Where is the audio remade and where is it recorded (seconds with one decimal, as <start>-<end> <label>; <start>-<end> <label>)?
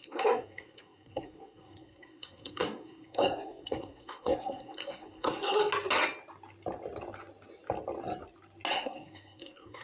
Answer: 0.0-5.6 remade; 5.6-8.7 recorded; 8.7-9.8 remade